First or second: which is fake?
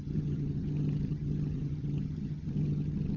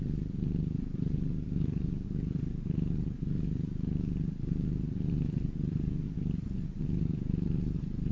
first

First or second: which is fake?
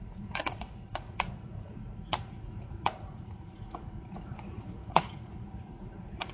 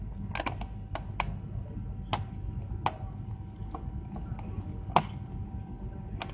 first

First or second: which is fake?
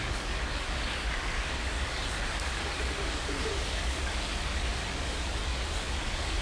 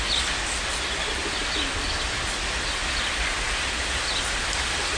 first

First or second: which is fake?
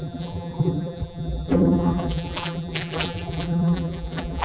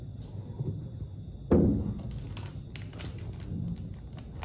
first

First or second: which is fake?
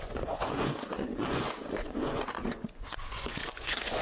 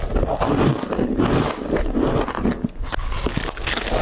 first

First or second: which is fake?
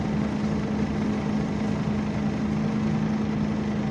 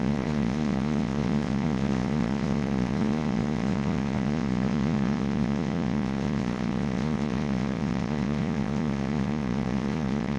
second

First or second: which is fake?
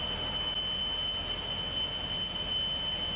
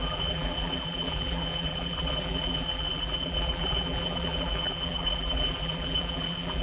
second